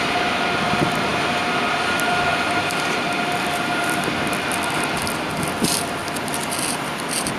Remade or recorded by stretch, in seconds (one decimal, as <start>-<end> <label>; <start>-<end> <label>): 0.0-2.3 recorded; 2.3-5.1 remade; 5.1-7.4 recorded